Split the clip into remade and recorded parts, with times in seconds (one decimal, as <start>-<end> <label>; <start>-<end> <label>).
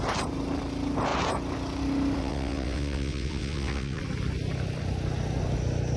0.0-2.2 recorded; 2.2-4.0 remade; 4.0-6.0 recorded